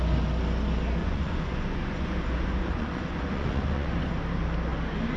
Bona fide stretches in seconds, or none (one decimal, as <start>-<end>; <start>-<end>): 0.0-1.0; 4.1-5.2